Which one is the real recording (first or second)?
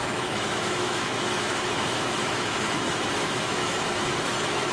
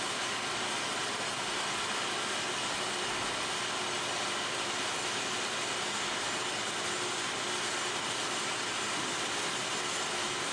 second